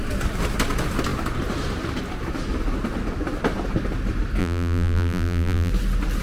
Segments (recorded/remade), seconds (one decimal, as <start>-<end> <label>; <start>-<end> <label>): 0.0-4.4 recorded; 4.4-5.7 remade; 5.7-6.2 recorded